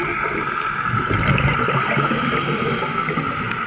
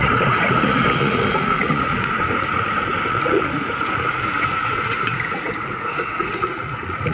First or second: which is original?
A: first